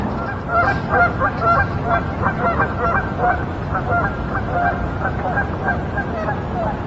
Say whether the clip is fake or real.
real